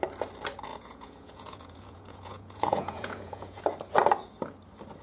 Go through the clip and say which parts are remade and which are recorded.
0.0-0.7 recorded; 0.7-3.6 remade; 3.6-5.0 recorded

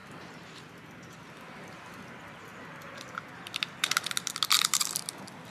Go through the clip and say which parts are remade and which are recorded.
0.0-0.7 remade; 0.7-1.2 recorded; 1.2-1.9 remade; 1.9-5.5 recorded

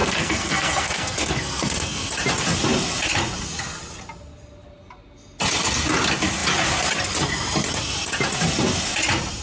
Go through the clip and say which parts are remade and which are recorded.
0.0-2.1 remade; 2.1-9.4 recorded

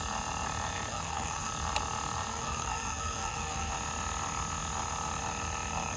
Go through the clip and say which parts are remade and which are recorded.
0.0-0.9 recorded; 0.9-1.5 remade; 1.5-2.3 recorded; 2.3-3.7 remade; 3.7-6.0 recorded

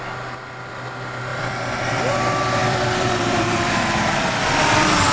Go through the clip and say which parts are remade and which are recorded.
0.0-1.3 recorded; 1.3-2.0 remade; 2.0-2.6 recorded; 2.6-4.0 remade; 4.0-5.1 recorded

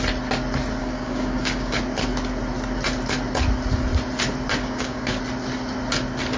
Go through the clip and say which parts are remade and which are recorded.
0.0-0.8 recorded; 0.8-1.8 remade; 1.8-4.6 recorded; 4.6-5.2 remade; 5.2-6.4 recorded

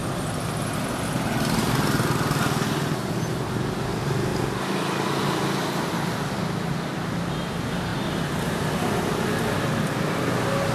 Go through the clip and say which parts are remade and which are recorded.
0.0-10.7 recorded

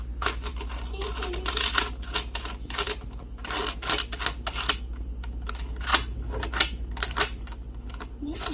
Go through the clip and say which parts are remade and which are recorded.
0.0-8.5 recorded